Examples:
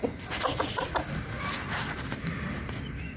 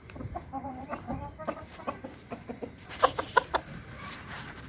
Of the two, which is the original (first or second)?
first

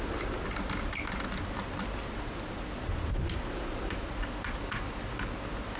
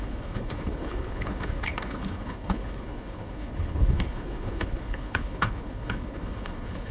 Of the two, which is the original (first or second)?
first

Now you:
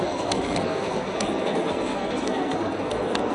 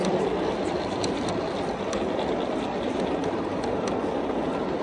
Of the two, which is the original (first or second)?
second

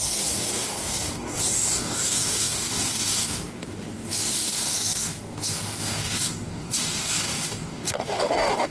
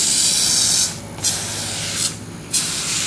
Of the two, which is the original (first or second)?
second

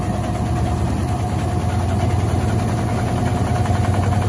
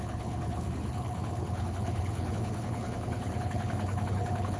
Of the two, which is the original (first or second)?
first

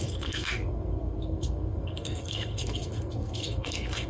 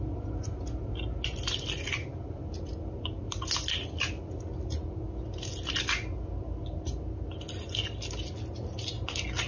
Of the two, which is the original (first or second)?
second